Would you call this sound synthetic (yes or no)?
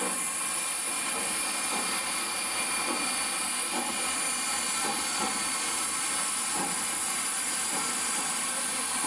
no